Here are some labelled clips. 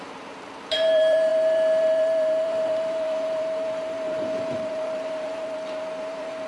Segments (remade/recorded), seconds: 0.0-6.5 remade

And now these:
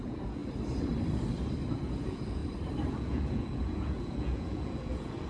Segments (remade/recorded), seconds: 0.0-0.4 remade; 0.4-1.7 recorded; 1.7-2.4 remade; 2.4-2.9 recorded; 2.9-5.3 remade